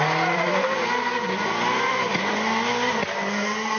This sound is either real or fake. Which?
real